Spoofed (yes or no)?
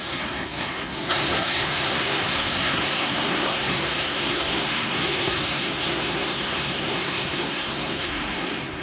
yes